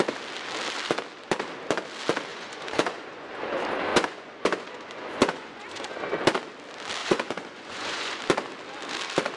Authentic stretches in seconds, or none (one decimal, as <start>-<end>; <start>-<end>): 0.0-2.3; 3.3-3.9; 6.2-7.0; 8.2-9.4

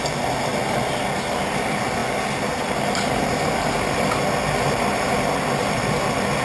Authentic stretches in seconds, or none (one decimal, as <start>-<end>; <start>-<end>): 0.0-6.4